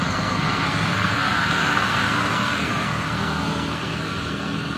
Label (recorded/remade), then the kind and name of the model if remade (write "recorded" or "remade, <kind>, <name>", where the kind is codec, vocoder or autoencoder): remade, codec, SNAC